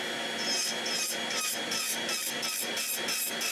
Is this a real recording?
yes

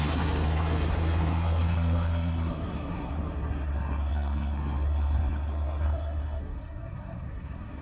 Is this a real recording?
no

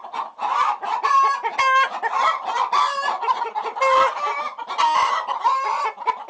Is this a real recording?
yes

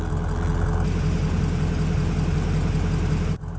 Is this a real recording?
yes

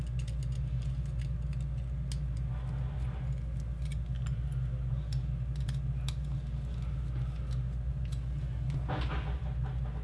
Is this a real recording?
yes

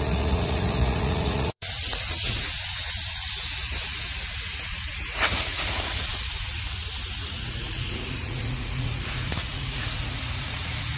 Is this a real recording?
no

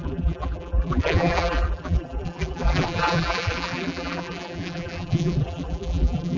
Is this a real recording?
no